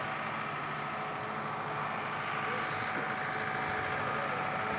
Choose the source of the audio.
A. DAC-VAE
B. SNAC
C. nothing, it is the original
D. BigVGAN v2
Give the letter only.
C